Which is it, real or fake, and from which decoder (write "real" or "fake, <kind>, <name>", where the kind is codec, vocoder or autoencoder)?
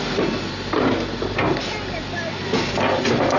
real